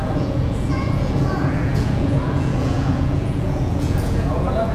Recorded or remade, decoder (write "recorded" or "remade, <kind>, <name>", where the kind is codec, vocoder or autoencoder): remade, vocoder, Vocos